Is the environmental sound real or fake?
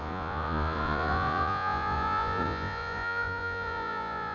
fake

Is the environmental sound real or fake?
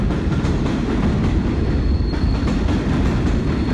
real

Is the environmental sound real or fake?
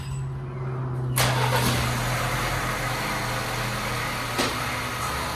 real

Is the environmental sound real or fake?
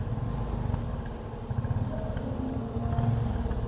real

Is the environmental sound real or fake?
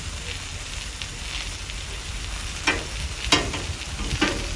real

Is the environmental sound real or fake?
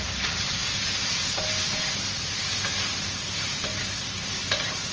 real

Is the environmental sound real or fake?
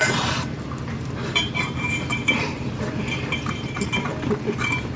fake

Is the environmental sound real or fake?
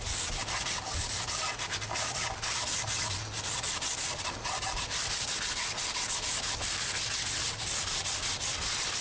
real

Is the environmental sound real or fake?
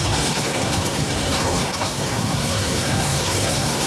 fake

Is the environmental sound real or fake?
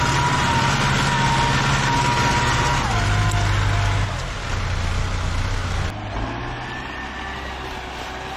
real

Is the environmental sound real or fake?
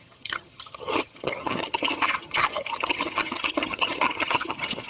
fake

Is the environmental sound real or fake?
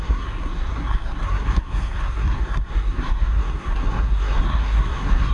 fake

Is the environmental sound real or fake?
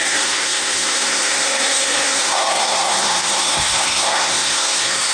fake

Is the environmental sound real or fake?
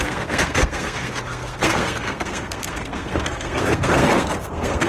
fake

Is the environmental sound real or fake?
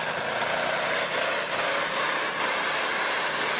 real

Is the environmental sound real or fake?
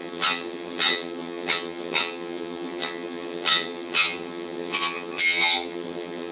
fake